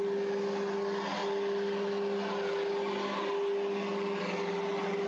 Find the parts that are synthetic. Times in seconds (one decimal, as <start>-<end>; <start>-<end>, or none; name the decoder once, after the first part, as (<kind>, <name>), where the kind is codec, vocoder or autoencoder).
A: none